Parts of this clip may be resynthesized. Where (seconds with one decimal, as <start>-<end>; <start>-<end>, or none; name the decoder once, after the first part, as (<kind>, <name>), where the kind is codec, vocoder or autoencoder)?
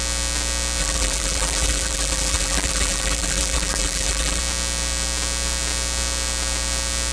0.8-4.4 (vocoder, BigVGAN v2)